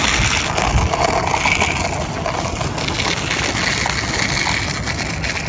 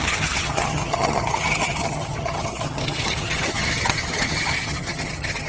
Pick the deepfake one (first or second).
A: second